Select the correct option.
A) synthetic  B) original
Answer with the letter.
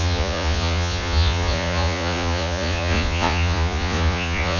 A